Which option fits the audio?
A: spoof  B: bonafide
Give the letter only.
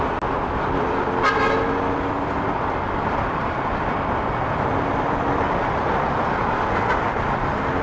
B